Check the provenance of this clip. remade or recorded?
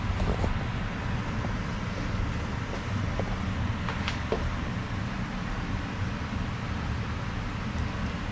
recorded